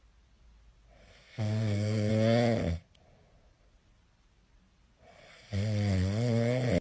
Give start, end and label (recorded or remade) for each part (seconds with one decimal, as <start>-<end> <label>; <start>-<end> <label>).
0.0-1.1 recorded; 1.1-2.1 remade; 2.1-6.8 recorded